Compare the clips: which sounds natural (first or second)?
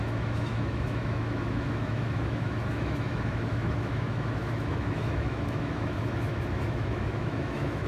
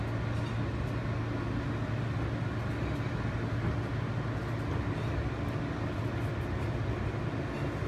second